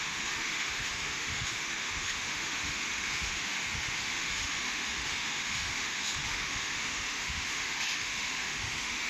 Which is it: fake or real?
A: fake